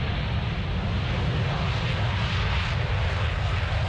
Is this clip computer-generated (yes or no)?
no